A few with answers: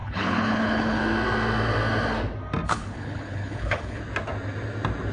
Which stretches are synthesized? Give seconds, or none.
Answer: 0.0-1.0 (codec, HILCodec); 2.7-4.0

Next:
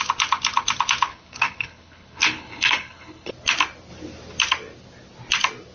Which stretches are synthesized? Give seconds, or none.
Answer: 1.1-3.3 (codec, HILCodec)

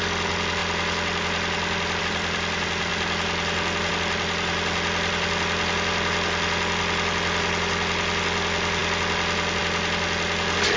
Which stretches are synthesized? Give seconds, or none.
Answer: none

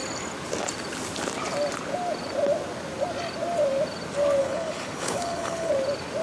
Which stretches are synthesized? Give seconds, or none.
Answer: 4.4-5.7 (codec, HILCodec)